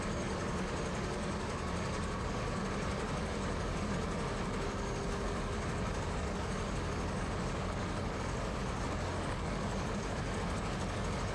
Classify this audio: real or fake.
fake